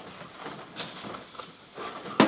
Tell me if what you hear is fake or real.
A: real